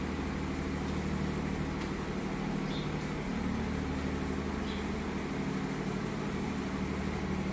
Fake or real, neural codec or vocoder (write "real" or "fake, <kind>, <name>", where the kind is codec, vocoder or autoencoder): real